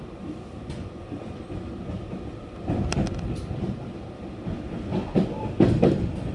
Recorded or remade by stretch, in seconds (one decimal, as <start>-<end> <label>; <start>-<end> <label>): 0.0-0.8 recorded; 0.8-1.4 remade; 1.4-6.3 recorded